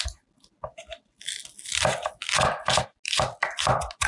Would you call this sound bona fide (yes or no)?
yes